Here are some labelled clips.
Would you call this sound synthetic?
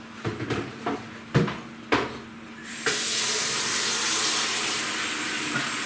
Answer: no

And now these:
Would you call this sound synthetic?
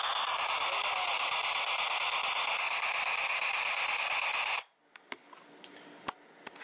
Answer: no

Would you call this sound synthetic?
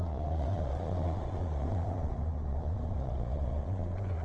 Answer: yes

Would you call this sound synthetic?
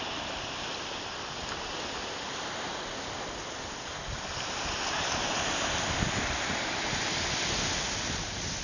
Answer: no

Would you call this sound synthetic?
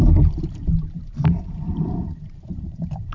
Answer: yes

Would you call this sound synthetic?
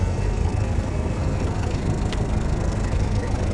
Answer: yes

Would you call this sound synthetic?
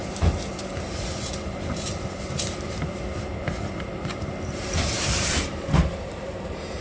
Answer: yes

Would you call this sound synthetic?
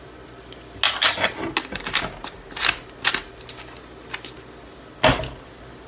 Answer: no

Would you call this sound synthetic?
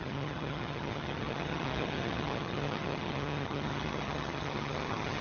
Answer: yes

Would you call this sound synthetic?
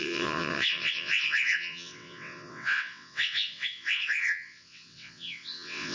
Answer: yes